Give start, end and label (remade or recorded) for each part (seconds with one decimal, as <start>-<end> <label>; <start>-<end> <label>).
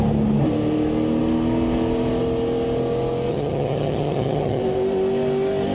0.0-3.3 recorded; 3.3-4.6 remade; 4.6-5.7 recorded